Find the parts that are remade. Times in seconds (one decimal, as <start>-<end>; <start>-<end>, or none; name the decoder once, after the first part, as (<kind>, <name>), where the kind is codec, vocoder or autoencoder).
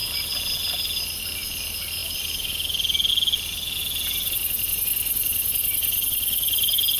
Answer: none